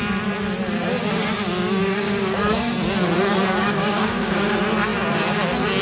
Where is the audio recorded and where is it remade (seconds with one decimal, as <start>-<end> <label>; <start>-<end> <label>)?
0.0-1.8 recorded; 1.8-2.7 remade; 2.7-3.6 recorded; 3.6-4.5 remade; 4.5-5.8 recorded